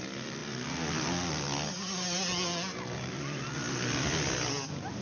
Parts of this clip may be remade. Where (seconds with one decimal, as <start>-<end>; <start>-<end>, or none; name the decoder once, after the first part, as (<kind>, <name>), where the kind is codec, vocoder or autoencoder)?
none